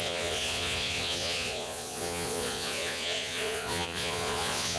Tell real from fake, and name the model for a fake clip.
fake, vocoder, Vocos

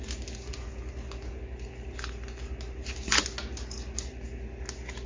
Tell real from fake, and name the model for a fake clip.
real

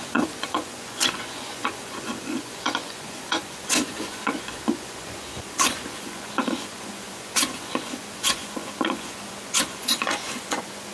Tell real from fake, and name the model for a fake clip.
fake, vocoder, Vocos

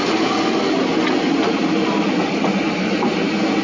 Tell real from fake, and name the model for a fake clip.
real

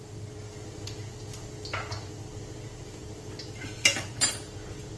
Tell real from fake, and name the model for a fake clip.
real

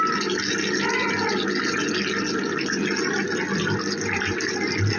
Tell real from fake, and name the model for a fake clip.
real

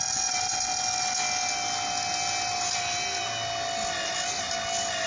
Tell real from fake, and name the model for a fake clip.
real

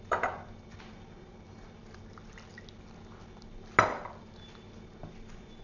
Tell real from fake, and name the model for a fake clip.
real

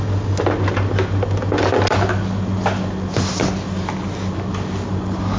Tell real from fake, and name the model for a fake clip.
real